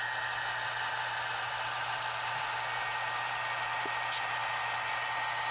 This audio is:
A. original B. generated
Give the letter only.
A